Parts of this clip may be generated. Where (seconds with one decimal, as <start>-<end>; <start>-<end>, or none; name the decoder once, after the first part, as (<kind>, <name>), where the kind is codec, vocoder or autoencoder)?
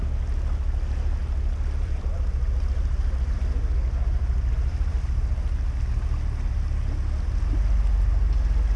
1.2-5.3 (vocoder, BigVGAN v2)